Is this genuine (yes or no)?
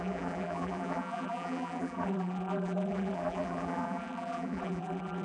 no